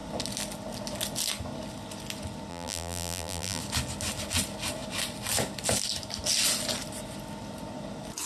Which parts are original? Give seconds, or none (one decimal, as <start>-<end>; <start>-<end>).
0.0-2.5; 3.6-8.3